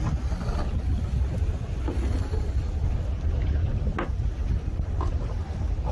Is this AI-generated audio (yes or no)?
no